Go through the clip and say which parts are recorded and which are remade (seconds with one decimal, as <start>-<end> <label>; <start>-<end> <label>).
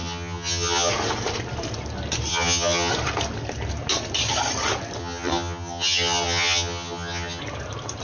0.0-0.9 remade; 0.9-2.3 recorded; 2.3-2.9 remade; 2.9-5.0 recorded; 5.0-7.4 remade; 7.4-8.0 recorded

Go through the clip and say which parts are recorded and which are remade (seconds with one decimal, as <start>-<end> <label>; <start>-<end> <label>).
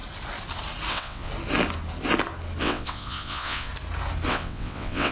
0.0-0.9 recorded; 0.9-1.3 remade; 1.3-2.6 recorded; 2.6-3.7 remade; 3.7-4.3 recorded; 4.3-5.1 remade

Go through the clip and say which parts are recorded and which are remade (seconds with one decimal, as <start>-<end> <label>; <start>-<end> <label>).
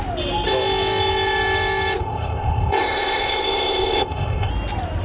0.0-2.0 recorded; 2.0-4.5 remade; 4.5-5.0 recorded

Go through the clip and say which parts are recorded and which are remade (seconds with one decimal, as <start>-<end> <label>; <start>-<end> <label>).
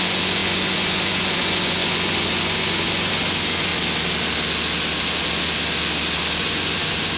0.0-3.7 remade; 3.7-6.4 recorded; 6.4-7.2 remade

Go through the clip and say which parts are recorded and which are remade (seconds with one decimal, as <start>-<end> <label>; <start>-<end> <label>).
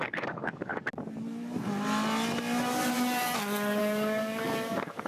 0.0-0.7 remade; 0.7-3.8 recorded; 3.8-5.1 remade